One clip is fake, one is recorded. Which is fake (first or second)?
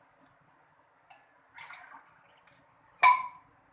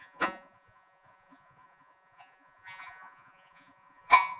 second